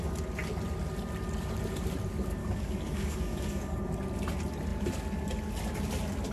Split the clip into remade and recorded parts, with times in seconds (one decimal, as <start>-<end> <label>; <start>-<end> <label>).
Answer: 0.0-2.4 recorded; 2.4-3.8 remade; 3.8-6.3 recorded